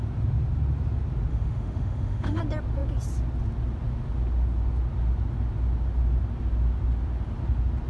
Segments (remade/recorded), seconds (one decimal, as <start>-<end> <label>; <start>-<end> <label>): 0.0-1.3 recorded; 1.3-2.4 remade; 2.4-7.9 recorded